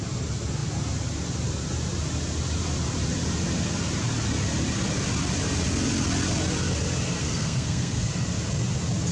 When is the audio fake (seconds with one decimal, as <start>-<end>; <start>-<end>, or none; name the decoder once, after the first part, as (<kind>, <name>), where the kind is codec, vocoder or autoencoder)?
7.2-8.1 (codec, SNAC)